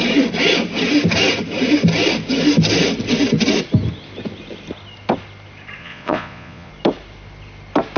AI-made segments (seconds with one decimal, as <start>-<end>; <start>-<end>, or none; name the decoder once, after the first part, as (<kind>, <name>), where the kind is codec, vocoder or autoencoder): 5.8-6.7 (vocoder, Vocos)